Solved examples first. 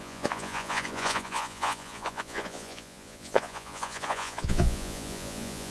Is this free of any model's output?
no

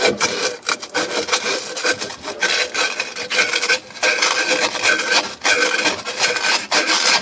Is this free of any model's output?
yes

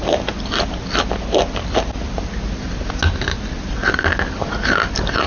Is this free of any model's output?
yes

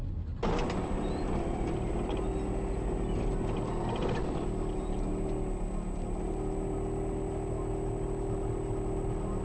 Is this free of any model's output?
yes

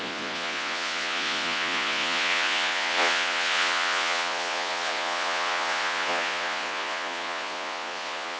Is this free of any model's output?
no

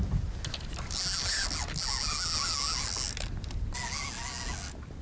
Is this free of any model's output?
yes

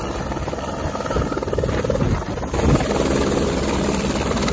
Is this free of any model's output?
yes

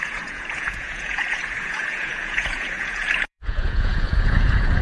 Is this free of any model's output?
no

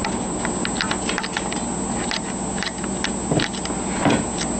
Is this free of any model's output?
yes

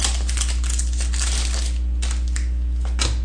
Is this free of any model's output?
yes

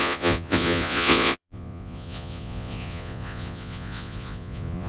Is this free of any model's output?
no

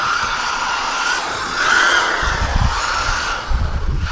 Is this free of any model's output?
no